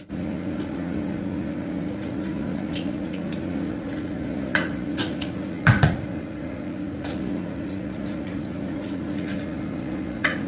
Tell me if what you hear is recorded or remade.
remade